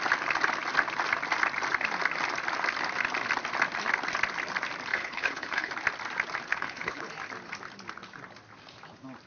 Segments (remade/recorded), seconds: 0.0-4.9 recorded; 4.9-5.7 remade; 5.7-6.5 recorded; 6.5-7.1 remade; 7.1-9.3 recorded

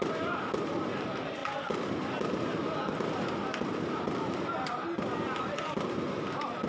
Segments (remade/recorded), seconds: 0.0-6.7 recorded

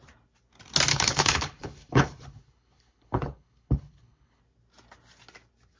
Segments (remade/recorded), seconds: 0.0-0.9 recorded; 0.9-4.4 remade; 4.4-5.8 recorded